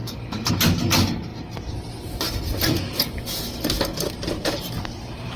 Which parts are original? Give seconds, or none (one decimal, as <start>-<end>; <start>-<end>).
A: 0.0-5.4